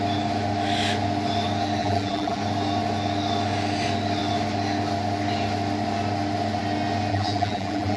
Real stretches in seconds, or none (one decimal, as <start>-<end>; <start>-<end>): 0.0-1.8; 2.4-7.1